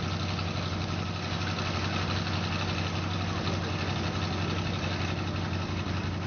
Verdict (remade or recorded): recorded